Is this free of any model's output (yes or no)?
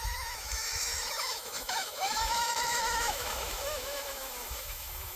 no